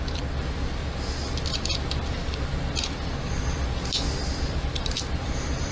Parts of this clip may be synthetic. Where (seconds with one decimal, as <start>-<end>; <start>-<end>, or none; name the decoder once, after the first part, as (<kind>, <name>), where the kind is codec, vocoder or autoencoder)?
0.0-0.8 (vocoder, BigVGAN v2); 4.2-5.7